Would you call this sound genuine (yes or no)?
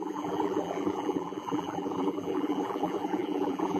no